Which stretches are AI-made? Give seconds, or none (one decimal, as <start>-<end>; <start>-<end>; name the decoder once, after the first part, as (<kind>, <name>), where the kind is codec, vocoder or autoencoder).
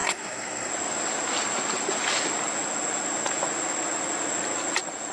0.0-0.7 (codec, SNAC)